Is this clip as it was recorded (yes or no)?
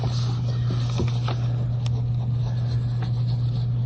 yes